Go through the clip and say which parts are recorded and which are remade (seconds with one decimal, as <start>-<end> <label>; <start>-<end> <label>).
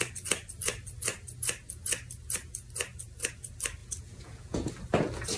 0.0-3.8 recorded; 3.8-4.7 remade; 4.7-5.4 recorded